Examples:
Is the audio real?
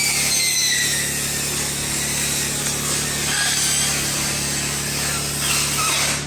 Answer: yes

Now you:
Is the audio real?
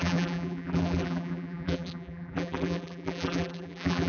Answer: no